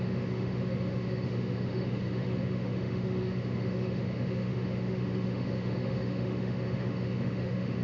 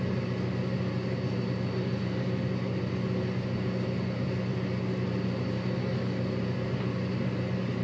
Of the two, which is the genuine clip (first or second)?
second